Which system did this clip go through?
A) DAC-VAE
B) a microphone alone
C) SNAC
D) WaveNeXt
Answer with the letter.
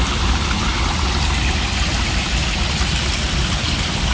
B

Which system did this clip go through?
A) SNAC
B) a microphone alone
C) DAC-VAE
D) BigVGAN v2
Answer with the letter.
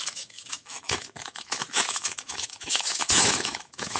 C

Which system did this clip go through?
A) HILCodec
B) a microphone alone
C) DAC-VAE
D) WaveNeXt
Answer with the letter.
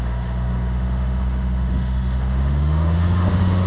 C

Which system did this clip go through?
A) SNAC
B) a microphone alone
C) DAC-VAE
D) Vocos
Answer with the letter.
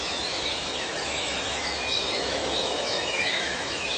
C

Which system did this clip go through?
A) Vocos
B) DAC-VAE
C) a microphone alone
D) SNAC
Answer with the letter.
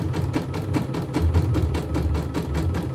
C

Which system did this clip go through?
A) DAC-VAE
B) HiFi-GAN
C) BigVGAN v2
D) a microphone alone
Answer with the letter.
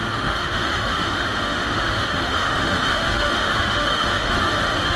A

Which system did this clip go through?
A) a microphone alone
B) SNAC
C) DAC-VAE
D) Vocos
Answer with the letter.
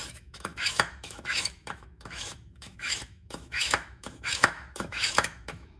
C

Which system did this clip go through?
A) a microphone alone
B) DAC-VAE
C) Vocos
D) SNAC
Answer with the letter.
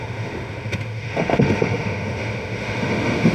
B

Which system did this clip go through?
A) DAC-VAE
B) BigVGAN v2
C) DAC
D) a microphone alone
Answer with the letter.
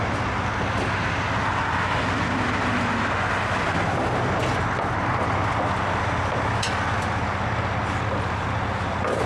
D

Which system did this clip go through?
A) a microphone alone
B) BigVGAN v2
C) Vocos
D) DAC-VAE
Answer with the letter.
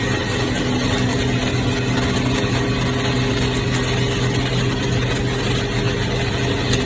A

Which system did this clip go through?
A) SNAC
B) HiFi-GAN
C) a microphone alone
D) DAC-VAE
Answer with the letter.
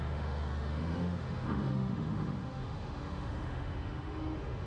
D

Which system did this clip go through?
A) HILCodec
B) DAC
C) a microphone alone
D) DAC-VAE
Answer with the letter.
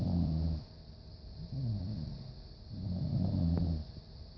C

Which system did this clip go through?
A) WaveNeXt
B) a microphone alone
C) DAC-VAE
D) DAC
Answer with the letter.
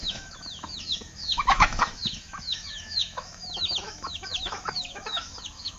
C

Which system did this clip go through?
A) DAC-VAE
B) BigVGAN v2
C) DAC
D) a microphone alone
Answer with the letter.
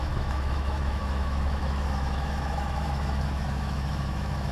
A